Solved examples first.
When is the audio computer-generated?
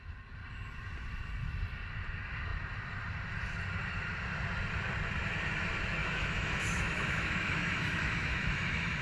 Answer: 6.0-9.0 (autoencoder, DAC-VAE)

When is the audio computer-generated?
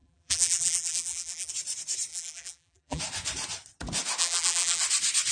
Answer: 0.0-1.5 (vocoder, BigVGAN v2); 2.1-3.0; 4.2-4.8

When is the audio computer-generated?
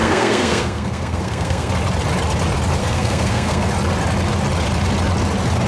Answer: 0.0-1.7 (codec, SNAC); 2.8-3.7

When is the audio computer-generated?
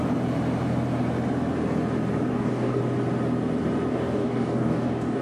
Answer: 2.3-2.8 (codec, DAC); 3.9-5.2